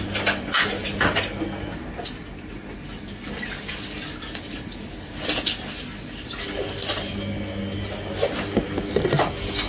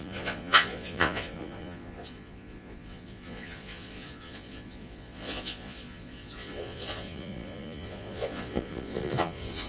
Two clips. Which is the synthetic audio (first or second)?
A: second